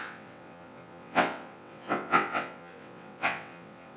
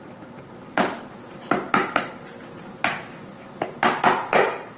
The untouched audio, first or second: second